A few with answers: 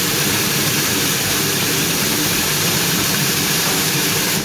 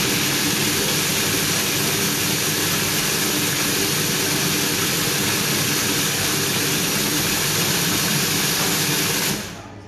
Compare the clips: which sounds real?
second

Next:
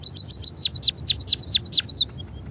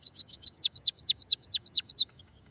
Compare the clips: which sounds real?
first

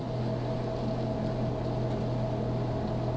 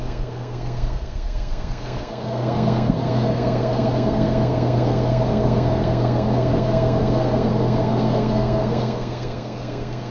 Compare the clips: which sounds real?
first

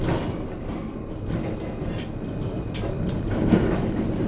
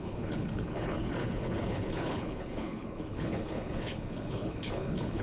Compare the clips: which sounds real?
first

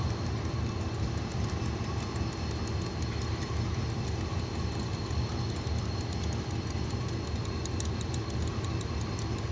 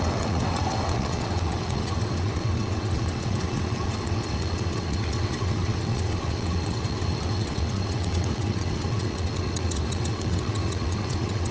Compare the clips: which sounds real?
first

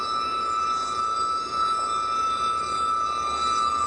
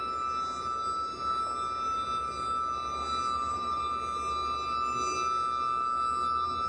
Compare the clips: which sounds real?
second